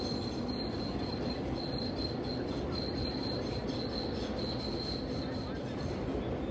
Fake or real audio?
real